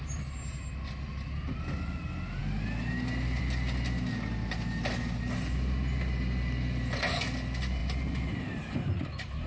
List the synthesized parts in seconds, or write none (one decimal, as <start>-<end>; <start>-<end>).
none